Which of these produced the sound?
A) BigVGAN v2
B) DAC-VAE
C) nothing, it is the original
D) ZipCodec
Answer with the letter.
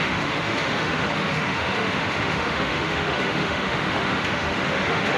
B